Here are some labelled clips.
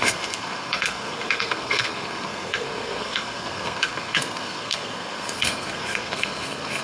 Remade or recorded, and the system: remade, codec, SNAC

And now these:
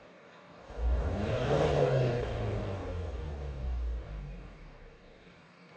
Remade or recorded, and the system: remade, codec, DAC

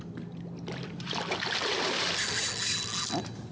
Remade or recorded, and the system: recorded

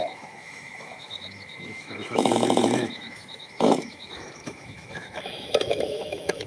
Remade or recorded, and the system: remade, autoencoder, DAC-VAE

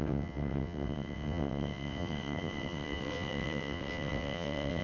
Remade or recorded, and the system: remade, vocoder, WaveNeXt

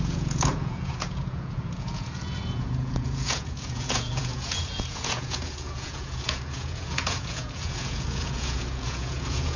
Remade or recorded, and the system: remade, vocoder, Vocos